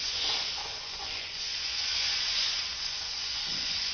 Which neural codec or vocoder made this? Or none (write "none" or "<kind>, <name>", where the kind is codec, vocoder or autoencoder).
vocoder, Vocos